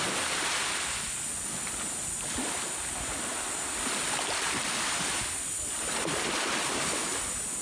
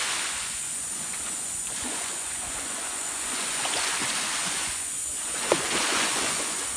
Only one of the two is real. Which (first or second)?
first